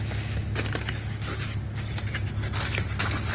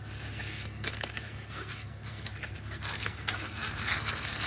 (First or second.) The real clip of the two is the first